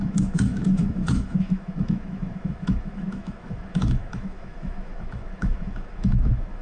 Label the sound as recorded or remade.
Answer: remade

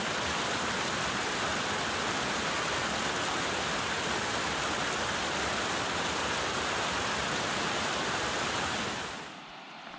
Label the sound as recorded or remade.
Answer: recorded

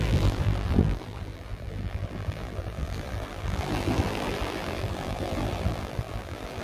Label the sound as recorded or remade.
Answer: remade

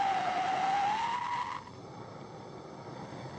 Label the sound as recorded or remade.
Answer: recorded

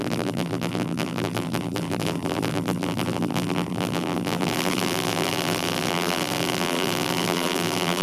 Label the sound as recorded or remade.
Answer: remade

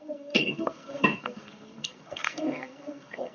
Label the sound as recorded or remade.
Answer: remade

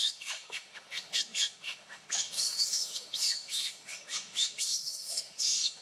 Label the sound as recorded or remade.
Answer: remade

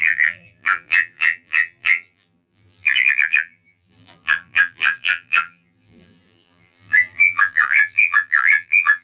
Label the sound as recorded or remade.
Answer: remade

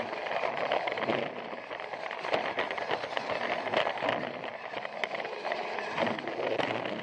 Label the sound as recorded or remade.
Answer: recorded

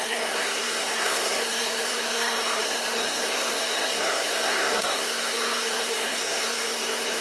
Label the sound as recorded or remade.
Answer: remade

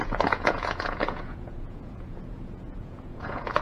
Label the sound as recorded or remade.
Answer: remade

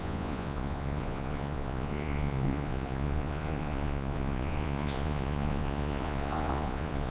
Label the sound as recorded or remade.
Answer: remade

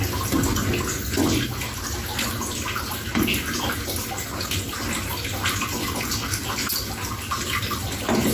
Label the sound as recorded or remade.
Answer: recorded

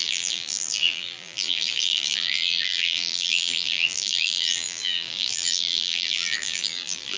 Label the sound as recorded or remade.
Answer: remade